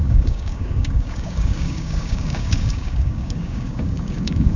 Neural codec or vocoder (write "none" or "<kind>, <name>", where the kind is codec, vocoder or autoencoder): codec, DAC